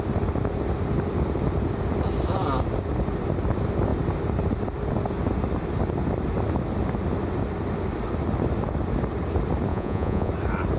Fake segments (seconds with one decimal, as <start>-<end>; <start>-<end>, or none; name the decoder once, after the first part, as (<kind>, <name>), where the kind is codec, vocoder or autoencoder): 9.7-10.3 (vocoder, Vocos)